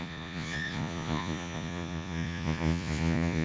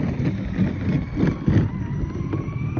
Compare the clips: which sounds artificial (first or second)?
first